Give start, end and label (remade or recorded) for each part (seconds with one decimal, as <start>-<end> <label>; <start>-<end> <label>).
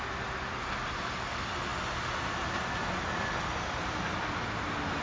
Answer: 0.0-5.0 recorded